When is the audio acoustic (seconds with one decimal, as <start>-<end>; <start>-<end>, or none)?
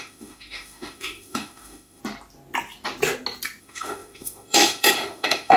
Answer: 2.0-3.6